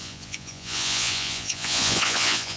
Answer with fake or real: fake